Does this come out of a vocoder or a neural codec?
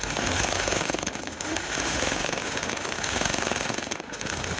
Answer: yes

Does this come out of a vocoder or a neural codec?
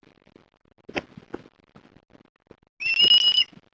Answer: no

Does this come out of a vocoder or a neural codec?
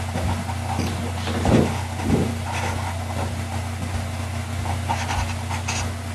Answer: no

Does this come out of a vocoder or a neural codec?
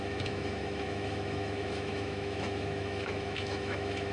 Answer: yes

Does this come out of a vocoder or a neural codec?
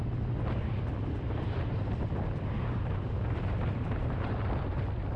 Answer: no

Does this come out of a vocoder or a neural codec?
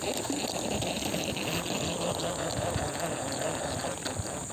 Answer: no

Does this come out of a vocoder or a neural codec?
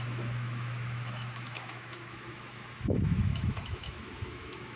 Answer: yes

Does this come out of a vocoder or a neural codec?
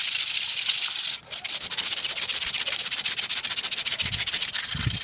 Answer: no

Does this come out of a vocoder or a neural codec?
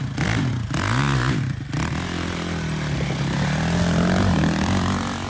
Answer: no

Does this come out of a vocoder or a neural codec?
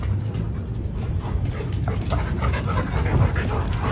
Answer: no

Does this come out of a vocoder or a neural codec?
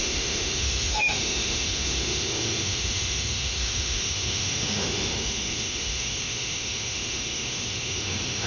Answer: yes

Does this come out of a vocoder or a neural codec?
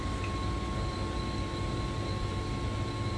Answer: no